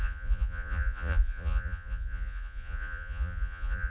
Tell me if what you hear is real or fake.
fake